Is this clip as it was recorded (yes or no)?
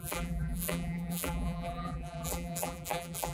no